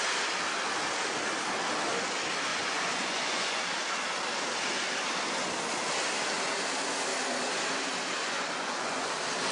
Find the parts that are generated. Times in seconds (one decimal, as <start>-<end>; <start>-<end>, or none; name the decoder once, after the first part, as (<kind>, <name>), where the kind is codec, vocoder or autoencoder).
2.5-3.6 (vocoder, Vocos); 8.2-9.1